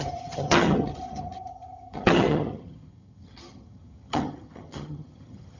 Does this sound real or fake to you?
fake